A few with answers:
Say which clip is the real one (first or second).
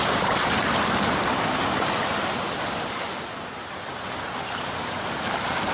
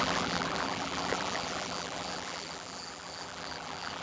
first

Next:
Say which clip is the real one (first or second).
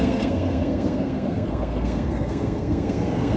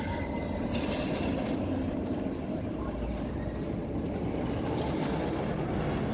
second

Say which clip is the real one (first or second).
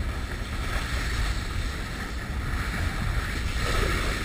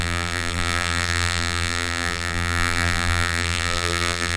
first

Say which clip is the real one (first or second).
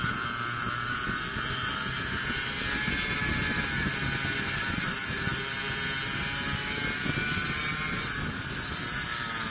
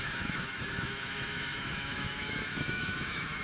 first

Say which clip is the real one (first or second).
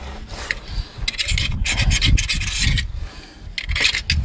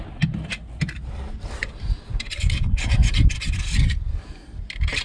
first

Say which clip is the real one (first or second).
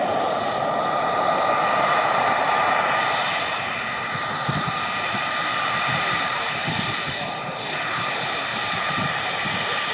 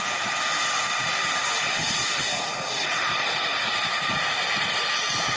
second